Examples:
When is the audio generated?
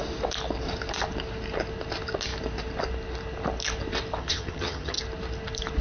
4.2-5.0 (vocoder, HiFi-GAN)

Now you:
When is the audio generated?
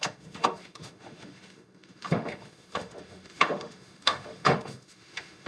0.0-5.5 (autoencoder, DAC-VAE)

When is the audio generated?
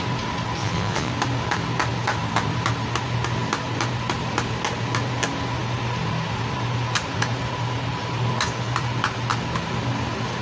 0.6-1.1 (vocoder, Vocos)